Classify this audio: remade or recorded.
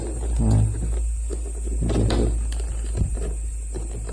remade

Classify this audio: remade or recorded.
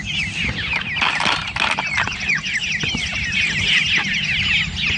recorded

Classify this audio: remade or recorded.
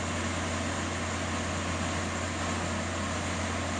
recorded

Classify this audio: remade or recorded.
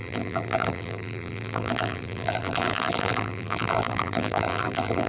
remade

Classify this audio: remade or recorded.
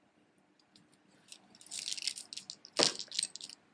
recorded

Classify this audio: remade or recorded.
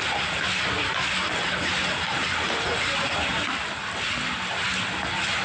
recorded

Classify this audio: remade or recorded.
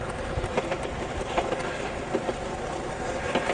recorded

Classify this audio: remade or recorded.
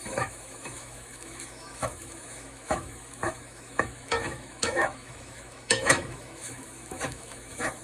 remade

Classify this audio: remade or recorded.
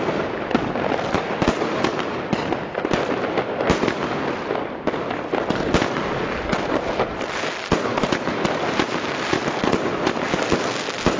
recorded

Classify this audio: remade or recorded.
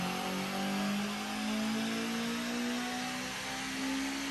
recorded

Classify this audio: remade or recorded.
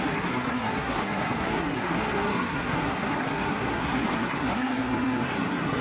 remade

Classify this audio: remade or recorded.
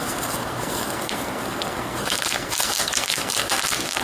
remade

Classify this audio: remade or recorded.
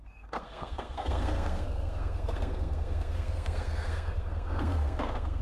remade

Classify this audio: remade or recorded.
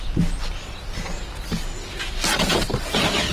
recorded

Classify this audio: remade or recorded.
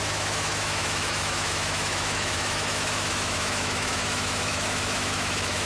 remade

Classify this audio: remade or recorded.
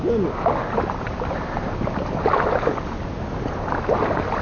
recorded